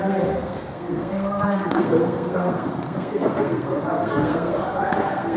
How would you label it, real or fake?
fake